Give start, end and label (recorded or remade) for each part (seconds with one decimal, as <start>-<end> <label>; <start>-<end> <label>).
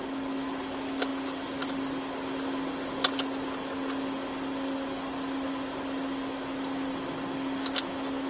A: 0.0-8.3 recorded